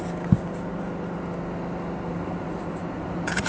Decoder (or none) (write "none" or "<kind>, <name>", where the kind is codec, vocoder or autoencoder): none